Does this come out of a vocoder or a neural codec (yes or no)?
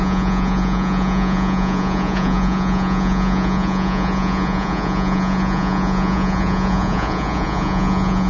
yes